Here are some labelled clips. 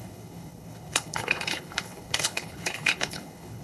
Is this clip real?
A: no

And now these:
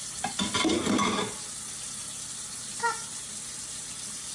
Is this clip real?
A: yes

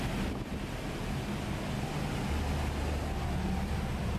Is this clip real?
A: yes